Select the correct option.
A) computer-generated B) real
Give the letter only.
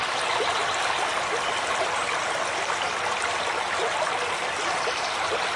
B